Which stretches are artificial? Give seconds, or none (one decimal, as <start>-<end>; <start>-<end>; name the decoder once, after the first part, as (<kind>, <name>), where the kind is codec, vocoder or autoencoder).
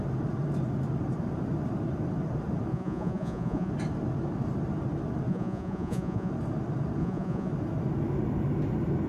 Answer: 2.7-3.7 (vocoder, Vocos); 5.3-6.3; 7.0-7.5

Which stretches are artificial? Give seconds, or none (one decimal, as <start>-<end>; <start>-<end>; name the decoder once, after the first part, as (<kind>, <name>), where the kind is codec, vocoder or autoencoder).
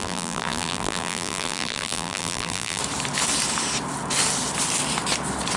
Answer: 0.0-2.8 (vocoder, BigVGAN v2)